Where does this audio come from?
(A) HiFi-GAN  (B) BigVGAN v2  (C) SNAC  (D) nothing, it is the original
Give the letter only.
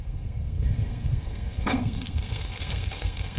C